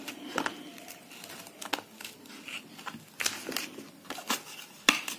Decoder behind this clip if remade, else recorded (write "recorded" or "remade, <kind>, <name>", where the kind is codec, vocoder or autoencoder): recorded